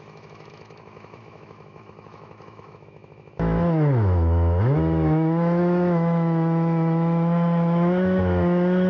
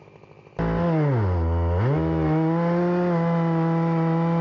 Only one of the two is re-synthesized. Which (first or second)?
first